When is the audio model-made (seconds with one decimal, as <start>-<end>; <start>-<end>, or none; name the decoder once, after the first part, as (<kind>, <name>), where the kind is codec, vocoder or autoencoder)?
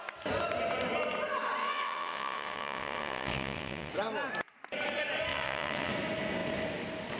1.6-3.9 (vocoder, WaveNeXt); 5.3-5.9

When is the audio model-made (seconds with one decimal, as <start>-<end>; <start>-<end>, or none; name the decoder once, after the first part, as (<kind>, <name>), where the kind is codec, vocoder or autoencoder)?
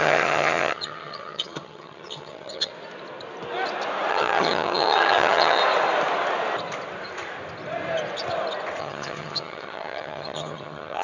0.0-2.7 (vocoder, HiFi-GAN); 4.1-5.6; 8.8-11.0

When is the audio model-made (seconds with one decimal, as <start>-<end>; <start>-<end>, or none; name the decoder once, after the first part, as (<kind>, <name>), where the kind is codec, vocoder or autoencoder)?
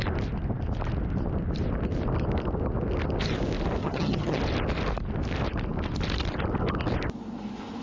3.8-4.4 (vocoder, HiFi-GAN)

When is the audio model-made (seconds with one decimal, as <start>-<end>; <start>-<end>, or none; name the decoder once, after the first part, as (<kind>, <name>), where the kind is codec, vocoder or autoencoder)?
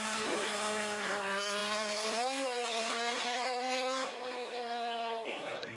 0.0-5.8 (codec, SNAC)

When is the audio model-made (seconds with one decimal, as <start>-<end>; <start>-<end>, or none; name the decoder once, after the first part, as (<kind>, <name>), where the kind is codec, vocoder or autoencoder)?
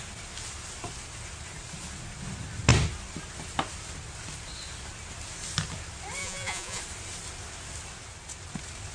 6.2-6.8 (vocoder, Vocos)